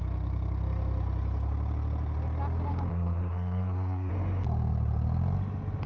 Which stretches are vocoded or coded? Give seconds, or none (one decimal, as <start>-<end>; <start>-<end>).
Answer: 2.9-4.1